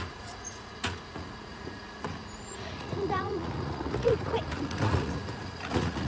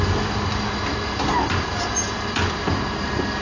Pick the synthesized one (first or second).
first